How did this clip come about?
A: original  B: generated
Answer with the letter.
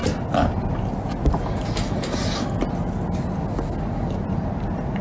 A